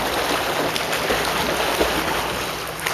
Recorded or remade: recorded